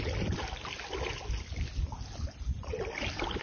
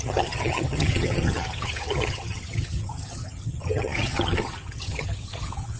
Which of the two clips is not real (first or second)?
second